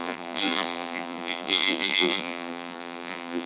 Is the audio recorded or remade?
remade